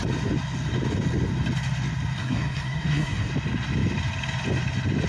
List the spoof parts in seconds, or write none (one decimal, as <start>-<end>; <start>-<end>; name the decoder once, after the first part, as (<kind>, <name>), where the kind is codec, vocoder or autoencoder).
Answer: 2.2-3.3 (codec, SNAC)